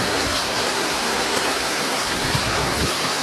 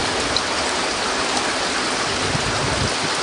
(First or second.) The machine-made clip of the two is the first